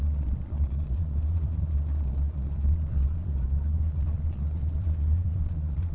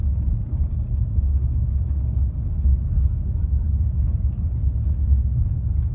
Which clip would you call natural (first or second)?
second